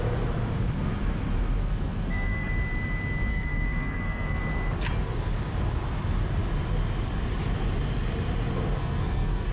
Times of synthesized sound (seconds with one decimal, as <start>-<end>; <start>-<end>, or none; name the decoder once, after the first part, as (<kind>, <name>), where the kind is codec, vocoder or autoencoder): 1.6-2.5 (codec, SNAC); 3.3-4.4; 8.8-9.5